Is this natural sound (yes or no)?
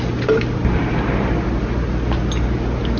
yes